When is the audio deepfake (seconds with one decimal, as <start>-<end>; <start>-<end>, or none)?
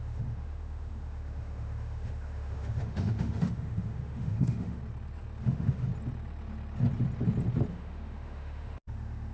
0.0-4.8; 5.4-5.9; 7.7-9.3